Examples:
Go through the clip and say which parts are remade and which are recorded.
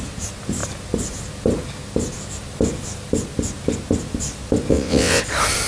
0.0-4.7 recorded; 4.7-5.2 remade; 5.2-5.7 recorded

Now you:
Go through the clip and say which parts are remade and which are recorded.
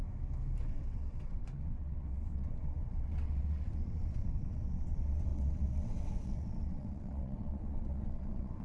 0.0-0.6 recorded; 0.6-8.6 remade